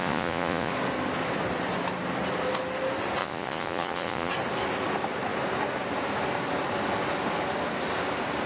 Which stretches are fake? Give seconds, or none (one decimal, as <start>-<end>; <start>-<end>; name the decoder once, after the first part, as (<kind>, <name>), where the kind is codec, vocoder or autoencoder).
0.0-0.7 (vocoder, Vocos); 3.2-4.3

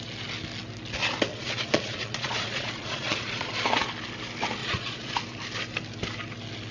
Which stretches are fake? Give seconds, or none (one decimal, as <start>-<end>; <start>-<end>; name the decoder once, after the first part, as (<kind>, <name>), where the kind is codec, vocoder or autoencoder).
1.3-3.5 (vocoder, Vocos); 4.6-5.1

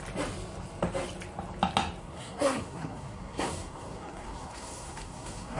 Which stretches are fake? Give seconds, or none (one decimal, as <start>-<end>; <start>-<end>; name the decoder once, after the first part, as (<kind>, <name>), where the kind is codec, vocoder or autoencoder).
2.0-5.6 (codec, SNAC)

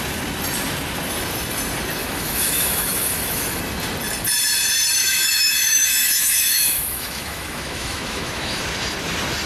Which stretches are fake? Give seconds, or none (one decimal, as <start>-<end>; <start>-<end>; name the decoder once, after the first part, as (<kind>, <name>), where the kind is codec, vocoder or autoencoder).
2.0-3.6 (autoencoder, DAC-VAE); 5.0-8.6

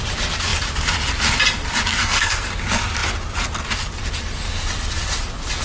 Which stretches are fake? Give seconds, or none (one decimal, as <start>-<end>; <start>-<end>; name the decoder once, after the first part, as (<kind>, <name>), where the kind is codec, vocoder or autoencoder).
1.9-2.5 (codec, SNAC)

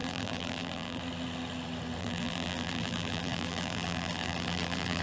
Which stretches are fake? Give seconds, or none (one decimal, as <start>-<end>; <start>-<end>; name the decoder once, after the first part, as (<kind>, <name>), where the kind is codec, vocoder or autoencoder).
0.0-1.0 (vocoder, BigVGAN v2); 2.0-5.0

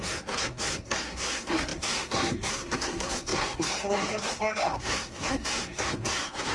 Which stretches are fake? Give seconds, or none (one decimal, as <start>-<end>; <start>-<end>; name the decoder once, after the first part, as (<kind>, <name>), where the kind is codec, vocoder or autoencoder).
0.0-6.5 (codec, SNAC)

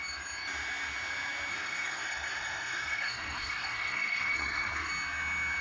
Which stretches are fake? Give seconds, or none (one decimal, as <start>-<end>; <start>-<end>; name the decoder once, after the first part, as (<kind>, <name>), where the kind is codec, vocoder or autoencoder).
1.5-4.9 (codec, SNAC)